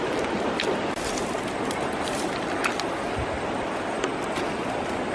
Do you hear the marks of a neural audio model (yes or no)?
no